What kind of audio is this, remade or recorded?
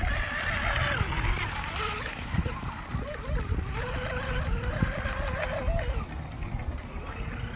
recorded